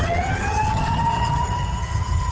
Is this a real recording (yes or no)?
no